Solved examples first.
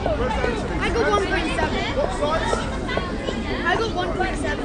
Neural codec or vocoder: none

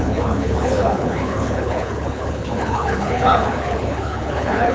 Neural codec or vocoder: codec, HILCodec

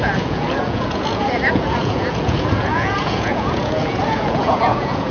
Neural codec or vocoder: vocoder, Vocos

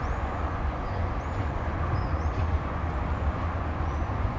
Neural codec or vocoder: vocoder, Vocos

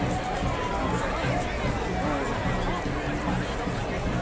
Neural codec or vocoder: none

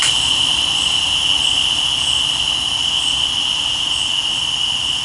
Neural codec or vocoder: none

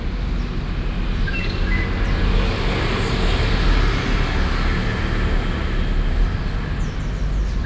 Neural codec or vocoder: none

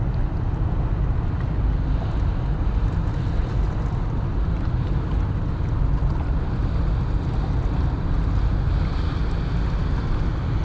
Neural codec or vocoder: none